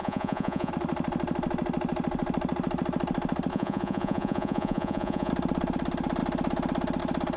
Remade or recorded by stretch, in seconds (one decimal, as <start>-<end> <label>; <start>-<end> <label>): 0.0-0.7 remade; 0.7-3.5 recorded; 3.5-5.3 remade; 5.3-7.4 recorded